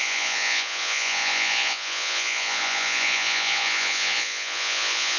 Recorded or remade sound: remade